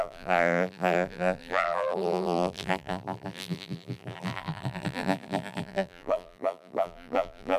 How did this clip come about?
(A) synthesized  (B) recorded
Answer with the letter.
A